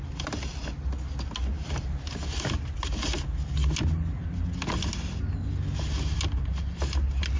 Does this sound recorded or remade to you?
recorded